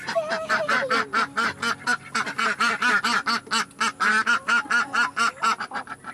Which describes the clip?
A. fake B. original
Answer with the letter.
B